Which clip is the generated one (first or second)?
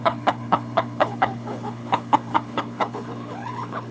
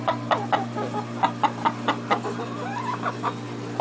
first